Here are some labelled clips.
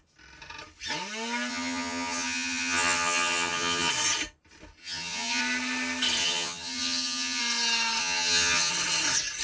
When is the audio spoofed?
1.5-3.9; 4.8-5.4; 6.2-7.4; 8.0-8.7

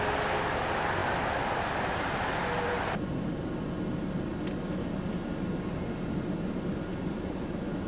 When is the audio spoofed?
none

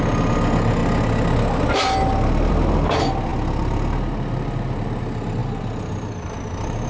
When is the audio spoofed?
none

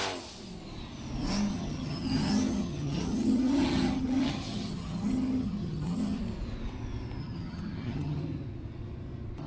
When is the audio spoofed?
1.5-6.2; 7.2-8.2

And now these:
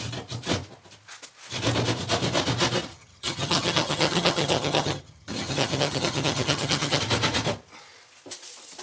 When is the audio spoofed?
2.9-7.0

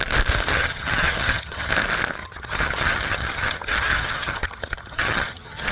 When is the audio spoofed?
0.5-1.7; 2.2-5.7